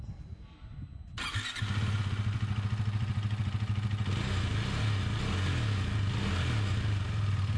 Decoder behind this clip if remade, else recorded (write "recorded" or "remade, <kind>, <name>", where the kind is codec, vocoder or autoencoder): recorded